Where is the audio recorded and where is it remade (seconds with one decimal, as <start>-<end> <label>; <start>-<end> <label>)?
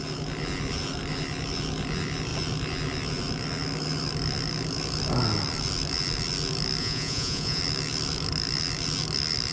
0.0-6.8 recorded; 6.8-7.6 remade; 7.6-9.5 recorded